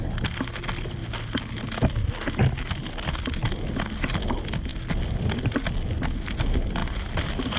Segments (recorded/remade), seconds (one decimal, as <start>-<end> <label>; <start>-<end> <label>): 0.0-7.6 recorded